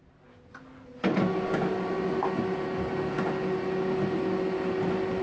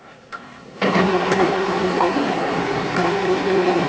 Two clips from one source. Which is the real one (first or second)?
first